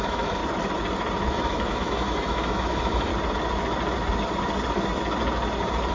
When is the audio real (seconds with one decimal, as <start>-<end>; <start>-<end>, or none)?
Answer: 0.4-1.3; 3.1-5.9